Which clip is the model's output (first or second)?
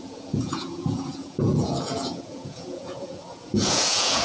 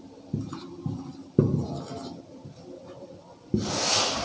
first